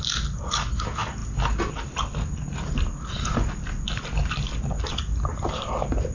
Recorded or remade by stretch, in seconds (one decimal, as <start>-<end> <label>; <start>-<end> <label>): 0.0-6.1 recorded